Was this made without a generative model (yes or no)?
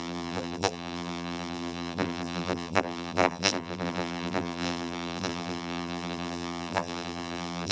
no